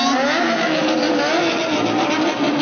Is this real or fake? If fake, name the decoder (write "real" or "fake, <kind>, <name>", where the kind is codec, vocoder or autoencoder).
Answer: real